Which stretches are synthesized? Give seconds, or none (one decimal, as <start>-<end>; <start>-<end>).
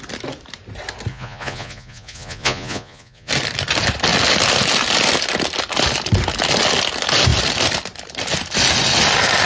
1.1-3.3